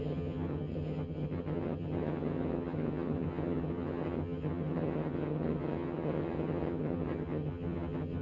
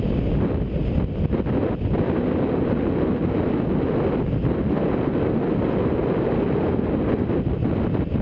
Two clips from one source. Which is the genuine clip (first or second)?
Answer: second